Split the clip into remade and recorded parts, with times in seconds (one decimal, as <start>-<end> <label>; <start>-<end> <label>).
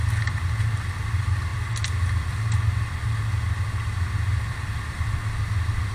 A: 0.0-5.9 recorded